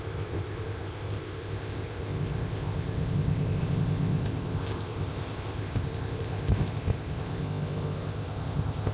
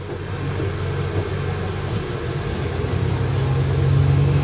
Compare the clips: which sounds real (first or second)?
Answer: second